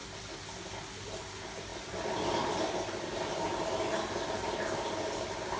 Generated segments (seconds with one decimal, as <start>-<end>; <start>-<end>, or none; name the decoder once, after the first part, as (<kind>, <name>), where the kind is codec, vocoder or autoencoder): none